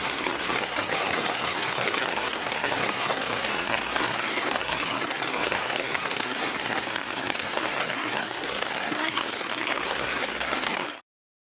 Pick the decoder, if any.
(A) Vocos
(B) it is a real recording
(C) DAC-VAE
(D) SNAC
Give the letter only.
D